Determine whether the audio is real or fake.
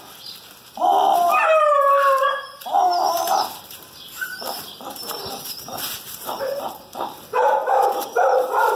fake